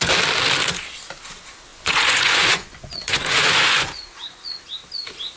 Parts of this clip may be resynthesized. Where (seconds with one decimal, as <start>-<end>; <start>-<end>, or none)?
1.7-4.6